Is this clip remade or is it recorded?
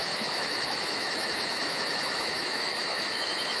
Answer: remade